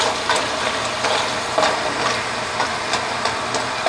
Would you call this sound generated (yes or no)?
no